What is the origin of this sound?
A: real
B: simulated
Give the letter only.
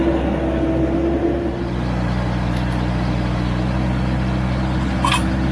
A